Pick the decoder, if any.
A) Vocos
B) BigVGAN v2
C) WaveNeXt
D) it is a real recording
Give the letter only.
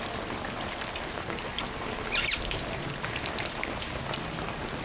D